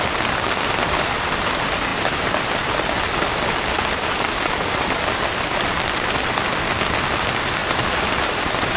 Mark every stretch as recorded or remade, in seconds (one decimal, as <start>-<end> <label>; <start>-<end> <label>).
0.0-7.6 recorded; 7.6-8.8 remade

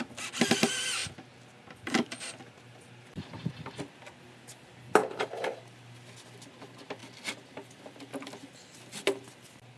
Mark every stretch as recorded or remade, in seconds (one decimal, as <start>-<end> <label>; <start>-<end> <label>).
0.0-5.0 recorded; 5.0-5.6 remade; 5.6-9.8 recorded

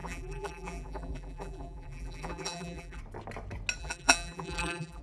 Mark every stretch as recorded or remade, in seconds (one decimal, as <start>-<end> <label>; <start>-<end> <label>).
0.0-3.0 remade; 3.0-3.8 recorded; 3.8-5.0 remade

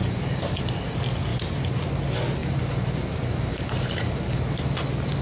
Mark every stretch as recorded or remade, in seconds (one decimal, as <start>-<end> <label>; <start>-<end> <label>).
0.0-0.6 remade; 0.6-1.3 recorded; 1.3-1.8 remade; 1.8-2.4 recorded; 2.4-4.8 remade; 4.8-5.2 recorded

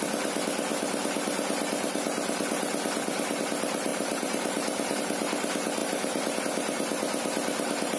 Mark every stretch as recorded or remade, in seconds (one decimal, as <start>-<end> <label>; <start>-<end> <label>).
0.0-3.9 recorded; 3.9-5.0 remade; 5.0-5.8 recorded; 5.8-6.4 remade; 6.4-8.0 recorded

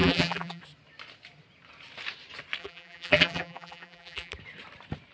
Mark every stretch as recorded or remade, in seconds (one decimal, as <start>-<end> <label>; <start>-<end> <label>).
0.0-0.6 remade; 0.6-2.6 recorded; 2.6-4.3 remade; 4.3-5.1 recorded

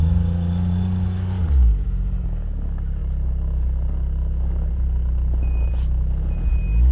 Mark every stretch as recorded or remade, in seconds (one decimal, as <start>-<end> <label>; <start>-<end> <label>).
0.0-3.0 recorded; 3.0-5.7 remade; 5.7-6.9 recorded

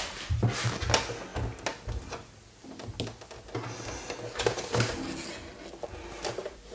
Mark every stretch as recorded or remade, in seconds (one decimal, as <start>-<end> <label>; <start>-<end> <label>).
0.0-6.7 recorded